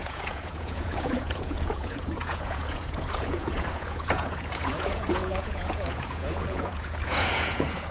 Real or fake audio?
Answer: fake